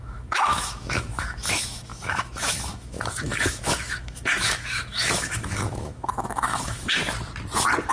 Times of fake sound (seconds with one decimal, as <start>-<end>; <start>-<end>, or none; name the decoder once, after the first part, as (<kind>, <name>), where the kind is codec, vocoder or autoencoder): 0.0-7.0 (autoencoder, DAC-VAE)

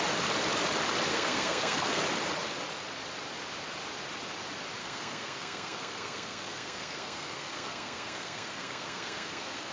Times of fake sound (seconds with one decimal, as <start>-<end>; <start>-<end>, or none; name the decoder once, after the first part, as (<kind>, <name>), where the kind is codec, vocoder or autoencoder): 1.1-2.0 (codec, SNAC); 4.8-9.7